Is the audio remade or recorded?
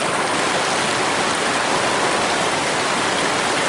recorded